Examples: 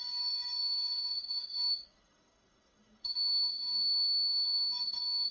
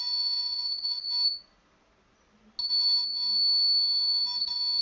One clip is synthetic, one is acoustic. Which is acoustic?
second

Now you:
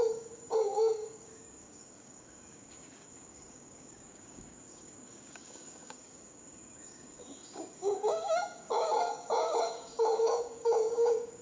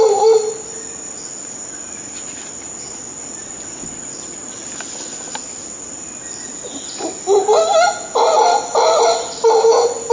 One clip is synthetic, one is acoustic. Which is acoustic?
second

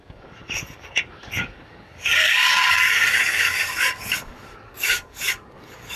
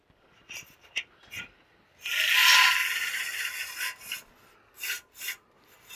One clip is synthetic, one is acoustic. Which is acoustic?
second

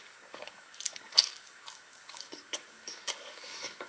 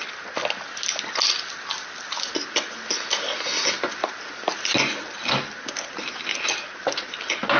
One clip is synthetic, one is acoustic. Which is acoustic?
second